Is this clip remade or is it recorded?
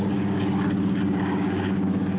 remade